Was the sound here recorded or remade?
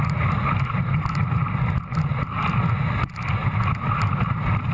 recorded